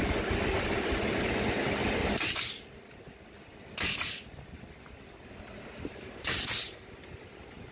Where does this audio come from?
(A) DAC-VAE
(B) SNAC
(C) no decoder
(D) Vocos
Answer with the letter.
C